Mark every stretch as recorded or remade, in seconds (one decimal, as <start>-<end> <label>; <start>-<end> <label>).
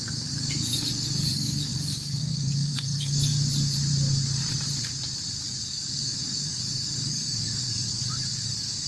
0.0-3.3 remade; 3.3-5.6 recorded; 5.6-8.9 remade